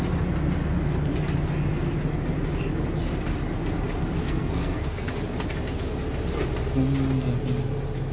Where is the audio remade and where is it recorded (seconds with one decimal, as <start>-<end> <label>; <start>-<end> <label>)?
0.0-4.2 recorded; 4.2-5.1 remade; 5.1-8.1 recorded